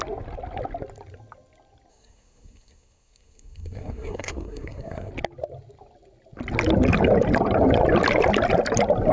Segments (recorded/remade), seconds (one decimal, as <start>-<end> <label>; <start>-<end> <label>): 0.0-1.9 recorded; 1.9-5.1 remade; 5.1-9.1 recorded